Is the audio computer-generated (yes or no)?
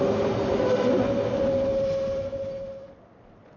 no